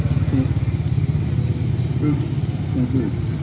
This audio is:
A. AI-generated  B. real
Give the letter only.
B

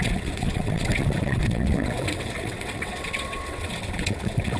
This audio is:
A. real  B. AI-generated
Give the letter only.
B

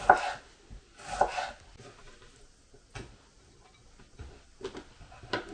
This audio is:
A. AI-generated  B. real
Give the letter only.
B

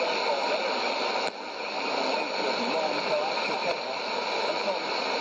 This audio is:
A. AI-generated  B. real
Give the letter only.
B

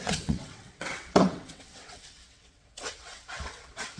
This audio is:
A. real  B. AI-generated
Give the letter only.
B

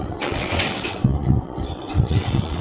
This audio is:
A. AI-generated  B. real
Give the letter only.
A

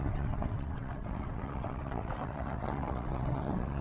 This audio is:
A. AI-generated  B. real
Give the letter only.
A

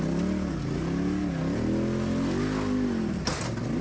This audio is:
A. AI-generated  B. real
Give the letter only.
B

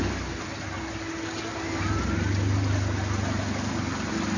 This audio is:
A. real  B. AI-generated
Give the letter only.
A